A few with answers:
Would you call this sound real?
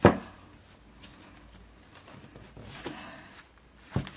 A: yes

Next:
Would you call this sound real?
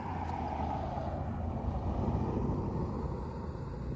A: yes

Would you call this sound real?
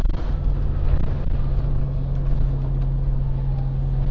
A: yes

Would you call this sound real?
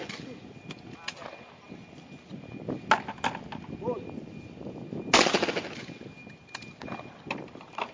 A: yes